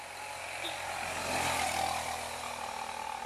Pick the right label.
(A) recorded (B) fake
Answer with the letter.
A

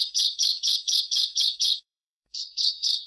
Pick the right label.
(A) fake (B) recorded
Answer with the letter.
A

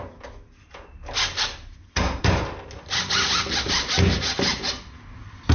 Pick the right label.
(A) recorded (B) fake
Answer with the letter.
A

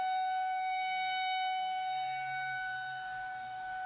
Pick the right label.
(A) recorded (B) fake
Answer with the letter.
B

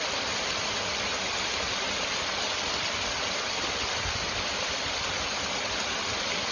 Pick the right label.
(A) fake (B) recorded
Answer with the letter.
B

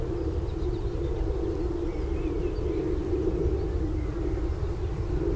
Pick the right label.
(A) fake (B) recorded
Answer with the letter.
B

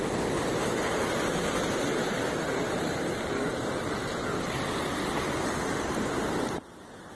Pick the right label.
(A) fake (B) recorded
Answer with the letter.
B